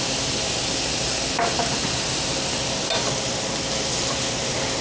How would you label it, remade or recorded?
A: recorded